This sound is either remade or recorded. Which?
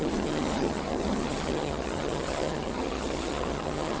remade